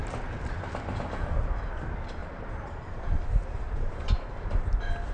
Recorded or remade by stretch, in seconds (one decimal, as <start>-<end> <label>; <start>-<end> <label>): 0.0-2.2 recorded; 2.2-4.3 remade; 4.3-5.1 recorded